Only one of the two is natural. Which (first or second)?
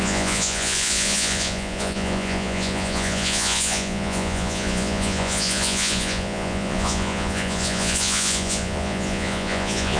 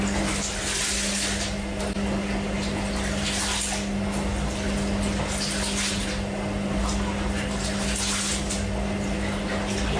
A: second